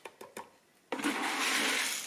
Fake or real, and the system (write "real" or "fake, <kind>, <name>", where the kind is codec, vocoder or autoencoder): real